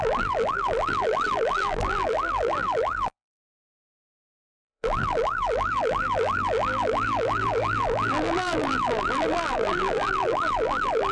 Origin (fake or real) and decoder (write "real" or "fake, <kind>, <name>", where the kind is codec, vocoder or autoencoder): fake, vocoder, BigVGAN v2